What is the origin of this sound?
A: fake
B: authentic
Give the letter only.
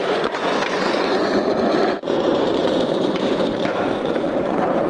A